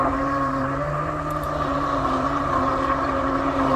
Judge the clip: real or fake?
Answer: fake